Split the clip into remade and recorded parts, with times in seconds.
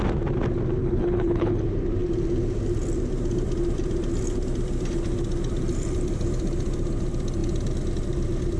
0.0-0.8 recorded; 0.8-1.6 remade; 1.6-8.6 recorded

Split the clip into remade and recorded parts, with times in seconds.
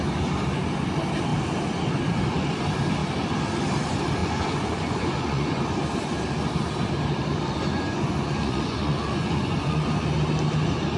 0.0-4.2 recorded; 4.2-5.6 remade; 5.6-7.7 recorded; 7.7-9.9 remade; 9.9-11.0 recorded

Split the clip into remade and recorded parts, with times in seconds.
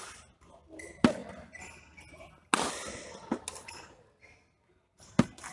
0.0-5.5 recorded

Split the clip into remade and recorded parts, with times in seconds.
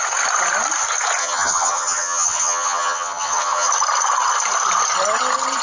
0.0-1.2 recorded; 1.2-3.7 remade; 3.7-5.6 recorded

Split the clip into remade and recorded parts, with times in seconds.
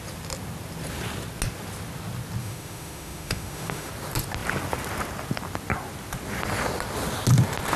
0.0-2.4 recorded; 2.4-3.9 remade; 3.9-7.8 recorded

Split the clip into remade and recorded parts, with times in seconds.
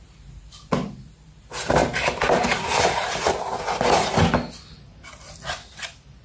0.0-1.8 recorded; 1.8-3.4 remade; 3.4-6.2 recorded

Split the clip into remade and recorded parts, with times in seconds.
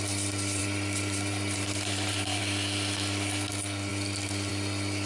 0.0-0.6 recorded; 0.6-2.4 remade; 2.4-5.1 recorded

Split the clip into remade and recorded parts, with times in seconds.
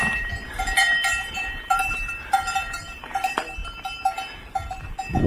0.0-3.6 remade; 3.6-4.4 recorded; 4.4-5.3 remade